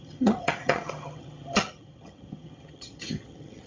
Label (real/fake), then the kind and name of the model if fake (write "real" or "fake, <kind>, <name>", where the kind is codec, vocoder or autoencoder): fake, vocoder, HiFi-GAN